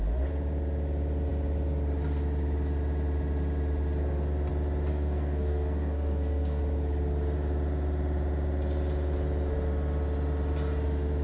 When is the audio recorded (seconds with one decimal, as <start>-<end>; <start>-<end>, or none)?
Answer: 0.0-4.9; 6.6-11.2